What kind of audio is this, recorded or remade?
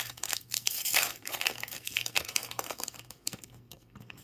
remade